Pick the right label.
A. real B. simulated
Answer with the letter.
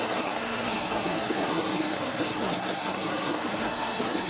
B